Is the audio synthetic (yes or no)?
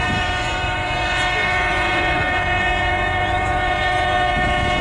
yes